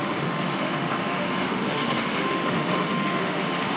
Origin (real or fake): fake